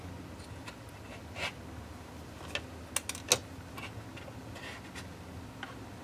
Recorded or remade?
recorded